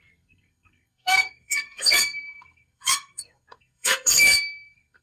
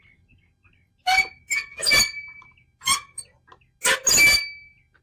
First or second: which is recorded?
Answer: second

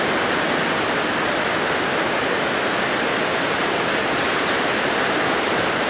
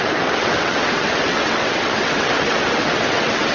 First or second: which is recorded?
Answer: first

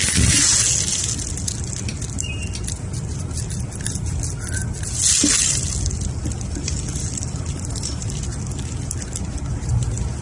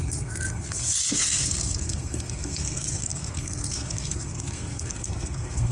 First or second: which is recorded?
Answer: first